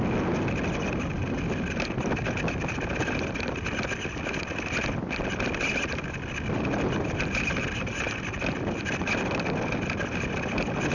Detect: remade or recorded recorded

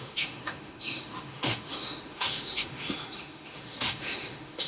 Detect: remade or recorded remade